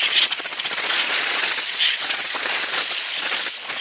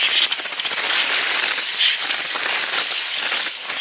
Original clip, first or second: second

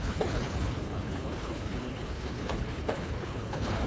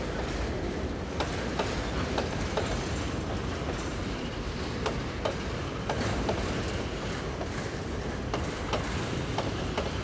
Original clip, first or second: second